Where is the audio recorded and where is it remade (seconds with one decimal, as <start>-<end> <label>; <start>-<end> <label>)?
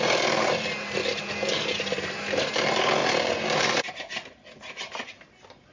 0.0-5.7 recorded